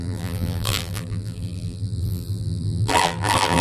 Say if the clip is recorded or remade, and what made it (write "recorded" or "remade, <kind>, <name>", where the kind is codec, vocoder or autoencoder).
remade, vocoder, BigVGAN v2